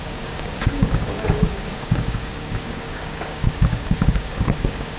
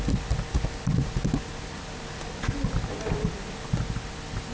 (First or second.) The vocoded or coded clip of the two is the first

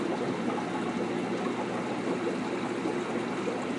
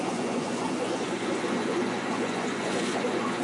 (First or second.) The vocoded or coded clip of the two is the second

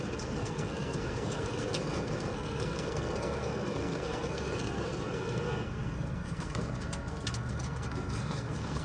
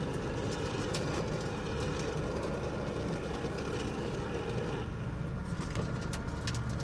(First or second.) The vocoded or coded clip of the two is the first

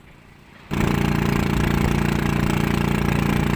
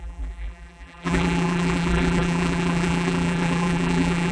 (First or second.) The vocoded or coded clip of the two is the second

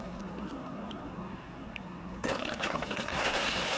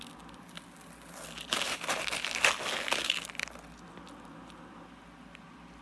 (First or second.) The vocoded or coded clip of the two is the first